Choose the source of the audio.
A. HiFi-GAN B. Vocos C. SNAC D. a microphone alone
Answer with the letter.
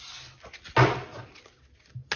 D